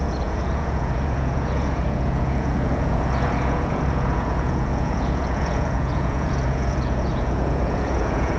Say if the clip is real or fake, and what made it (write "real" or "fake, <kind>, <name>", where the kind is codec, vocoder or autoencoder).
fake, vocoder, Vocos